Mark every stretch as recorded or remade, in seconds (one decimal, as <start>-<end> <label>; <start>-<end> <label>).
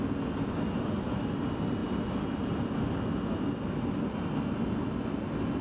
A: 0.0-5.6 recorded